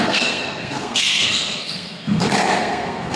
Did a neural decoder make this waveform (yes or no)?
yes